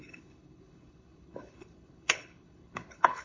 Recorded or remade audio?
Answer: remade